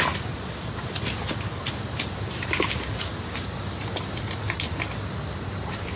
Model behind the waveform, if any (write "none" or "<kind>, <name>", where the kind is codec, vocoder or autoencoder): none